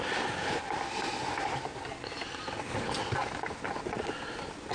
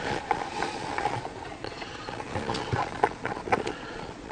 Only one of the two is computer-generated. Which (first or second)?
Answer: second